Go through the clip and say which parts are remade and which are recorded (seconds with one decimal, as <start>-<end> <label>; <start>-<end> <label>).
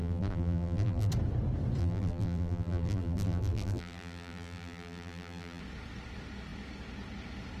0.0-1.1 remade; 1.1-1.8 recorded; 1.8-5.6 remade; 5.6-7.6 recorded